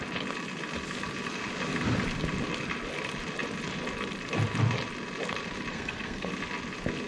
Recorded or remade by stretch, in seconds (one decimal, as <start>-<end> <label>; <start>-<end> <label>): 0.0-5.7 recorded; 5.7-6.3 remade; 6.3-7.1 recorded